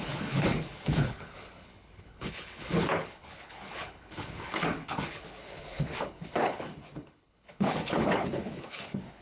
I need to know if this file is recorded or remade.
remade